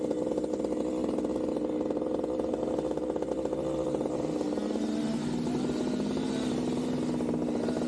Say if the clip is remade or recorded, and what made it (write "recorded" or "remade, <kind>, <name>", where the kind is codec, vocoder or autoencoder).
recorded